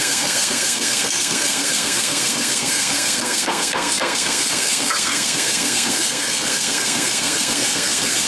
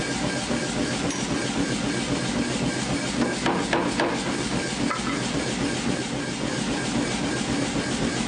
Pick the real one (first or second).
second